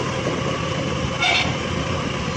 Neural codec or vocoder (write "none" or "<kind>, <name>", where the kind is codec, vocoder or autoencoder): none